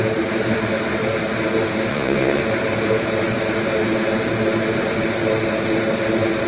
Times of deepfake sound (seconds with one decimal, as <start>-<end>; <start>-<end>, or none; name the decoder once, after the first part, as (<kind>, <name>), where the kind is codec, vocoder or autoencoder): 1.9-2.4 (vocoder, Vocos)